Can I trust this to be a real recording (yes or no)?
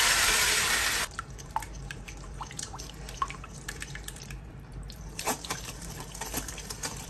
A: no